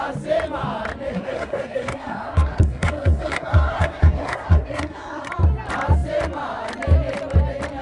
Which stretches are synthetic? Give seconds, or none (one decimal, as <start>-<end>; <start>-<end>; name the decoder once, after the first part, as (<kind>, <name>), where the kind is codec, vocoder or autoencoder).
1.1-5.3 (codec, SNAC)